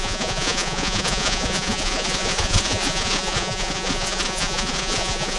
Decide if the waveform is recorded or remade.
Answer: remade